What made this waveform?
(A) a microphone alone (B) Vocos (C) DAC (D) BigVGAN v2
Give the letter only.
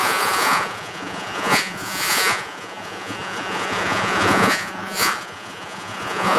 B